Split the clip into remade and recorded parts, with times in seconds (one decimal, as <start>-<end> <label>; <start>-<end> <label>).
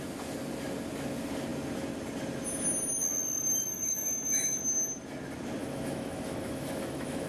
0.0-3.7 recorded; 3.7-4.6 remade; 4.6-5.6 recorded; 5.6-7.3 remade